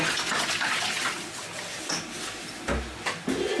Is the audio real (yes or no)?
yes